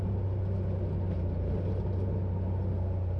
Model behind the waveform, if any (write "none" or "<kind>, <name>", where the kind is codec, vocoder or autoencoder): none